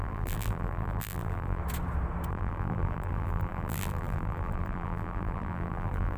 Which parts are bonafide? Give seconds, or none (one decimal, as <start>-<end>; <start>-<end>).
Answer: 1.6-2.3